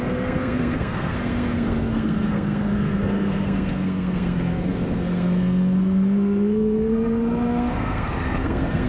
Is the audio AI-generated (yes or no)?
yes